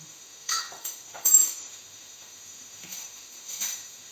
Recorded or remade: remade